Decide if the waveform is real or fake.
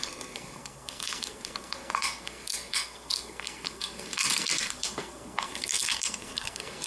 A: fake